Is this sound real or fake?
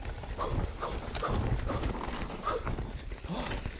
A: real